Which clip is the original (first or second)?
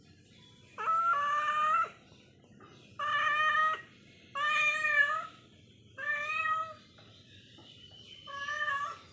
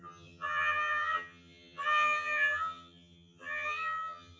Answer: first